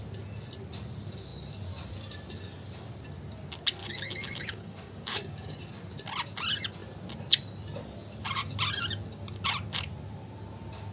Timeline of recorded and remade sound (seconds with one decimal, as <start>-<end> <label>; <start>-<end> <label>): 0.0-3.8 recorded; 3.8-5.6 remade; 5.6-10.9 recorded